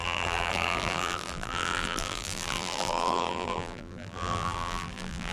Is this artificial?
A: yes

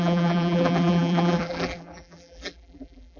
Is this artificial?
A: yes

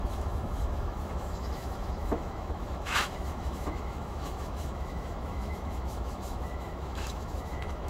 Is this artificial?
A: yes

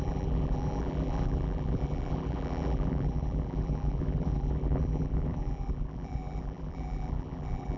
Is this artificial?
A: yes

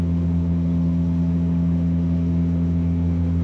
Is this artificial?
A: yes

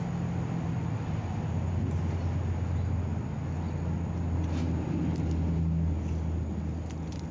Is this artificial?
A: no